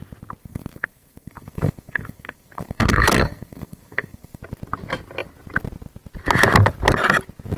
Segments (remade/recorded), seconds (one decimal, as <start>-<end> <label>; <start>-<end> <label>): 0.0-0.4 recorded; 0.4-4.4 remade; 4.4-7.6 recorded